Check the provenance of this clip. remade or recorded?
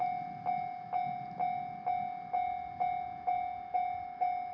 recorded